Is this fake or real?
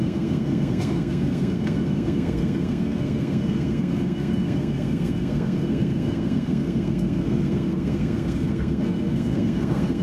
fake